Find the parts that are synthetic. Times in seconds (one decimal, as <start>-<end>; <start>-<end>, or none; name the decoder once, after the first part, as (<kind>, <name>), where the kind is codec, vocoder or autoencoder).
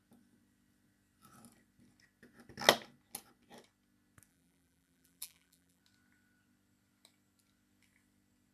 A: 4.3-5.8 (vocoder, BigVGAN v2)